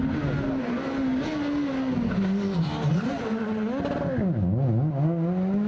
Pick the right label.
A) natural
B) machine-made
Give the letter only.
A